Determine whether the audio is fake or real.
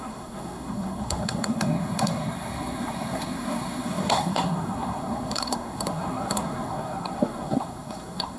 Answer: fake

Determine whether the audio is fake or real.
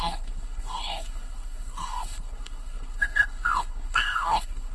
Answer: fake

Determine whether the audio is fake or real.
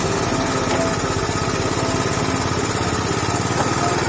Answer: real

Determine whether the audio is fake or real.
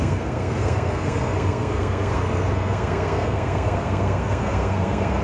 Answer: fake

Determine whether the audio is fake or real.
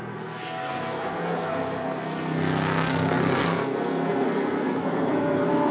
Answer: fake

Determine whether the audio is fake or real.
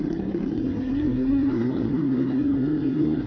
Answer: fake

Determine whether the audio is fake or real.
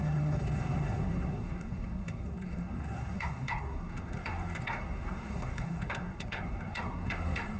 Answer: fake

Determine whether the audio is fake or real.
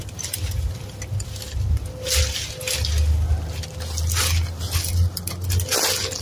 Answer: real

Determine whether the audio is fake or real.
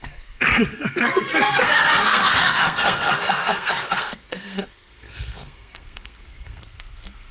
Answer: fake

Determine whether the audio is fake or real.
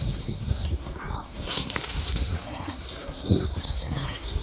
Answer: fake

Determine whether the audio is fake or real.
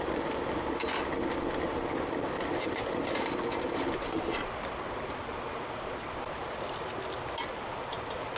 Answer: real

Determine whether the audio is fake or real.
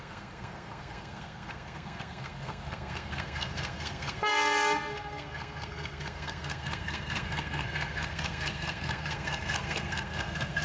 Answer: fake